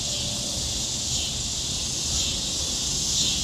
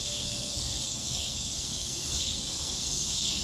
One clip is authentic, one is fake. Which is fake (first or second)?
second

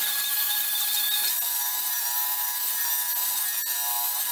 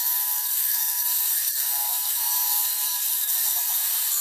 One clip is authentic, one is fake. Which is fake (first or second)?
second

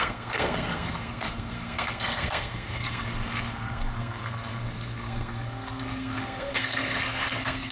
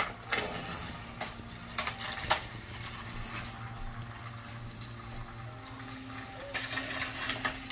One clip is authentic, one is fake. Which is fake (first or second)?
first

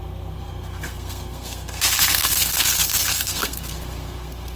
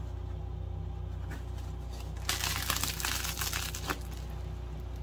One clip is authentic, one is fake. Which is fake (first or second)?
first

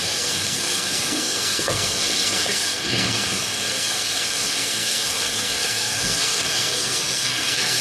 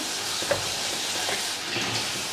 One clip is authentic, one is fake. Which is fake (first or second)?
first